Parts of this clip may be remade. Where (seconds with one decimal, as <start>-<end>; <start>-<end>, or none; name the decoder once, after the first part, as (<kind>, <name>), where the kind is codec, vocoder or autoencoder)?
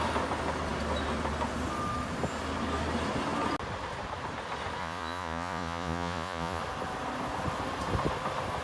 4.8-6.6 (vocoder, Vocos)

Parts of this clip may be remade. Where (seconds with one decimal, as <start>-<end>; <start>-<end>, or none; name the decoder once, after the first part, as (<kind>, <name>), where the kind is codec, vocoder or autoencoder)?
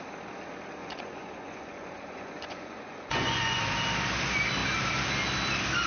0.8-3.6 (vocoder, Vocos)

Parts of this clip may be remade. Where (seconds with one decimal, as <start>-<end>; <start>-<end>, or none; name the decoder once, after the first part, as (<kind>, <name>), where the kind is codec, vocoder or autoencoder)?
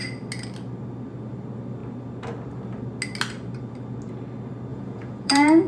4.7-5.7 (vocoder, Vocos)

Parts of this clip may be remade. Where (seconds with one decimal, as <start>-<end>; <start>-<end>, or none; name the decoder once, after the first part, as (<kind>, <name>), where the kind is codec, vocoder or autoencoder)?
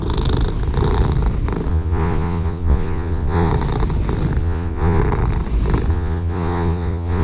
1.7-3.5 (vocoder, Vocos); 4.4-5.0; 5.9-7.2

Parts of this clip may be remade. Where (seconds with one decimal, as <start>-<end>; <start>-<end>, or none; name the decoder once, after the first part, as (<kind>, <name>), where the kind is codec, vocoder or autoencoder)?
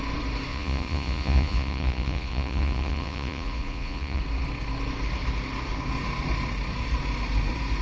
0.5-4.2 (vocoder, Vocos)